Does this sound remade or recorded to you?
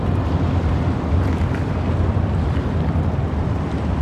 remade